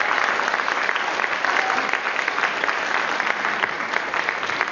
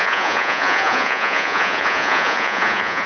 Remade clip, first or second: second